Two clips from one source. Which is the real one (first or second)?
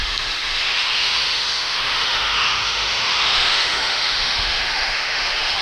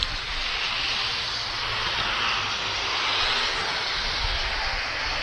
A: second